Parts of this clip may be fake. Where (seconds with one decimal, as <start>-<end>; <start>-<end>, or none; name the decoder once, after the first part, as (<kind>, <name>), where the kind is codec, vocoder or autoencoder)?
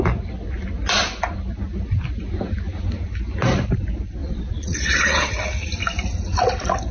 4.2-5.3 (vocoder, Vocos)